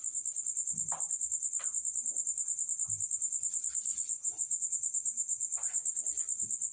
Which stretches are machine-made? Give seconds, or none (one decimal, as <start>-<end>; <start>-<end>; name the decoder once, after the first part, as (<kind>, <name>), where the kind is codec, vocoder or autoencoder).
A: 3.9-6.0 (vocoder, Vocos)